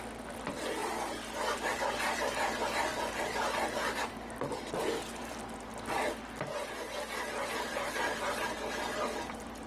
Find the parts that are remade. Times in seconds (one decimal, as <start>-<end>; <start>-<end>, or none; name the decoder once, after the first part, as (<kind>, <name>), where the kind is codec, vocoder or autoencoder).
0.0-5.7 (vocoder, BigVGAN v2); 8.4-9.7